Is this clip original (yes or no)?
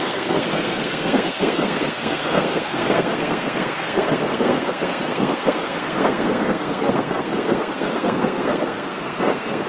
no